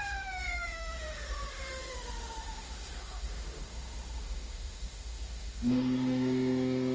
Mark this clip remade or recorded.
remade